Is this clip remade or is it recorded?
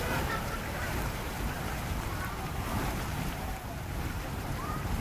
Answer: remade